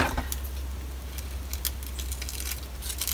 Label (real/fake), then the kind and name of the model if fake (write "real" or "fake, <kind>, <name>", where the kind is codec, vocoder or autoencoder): real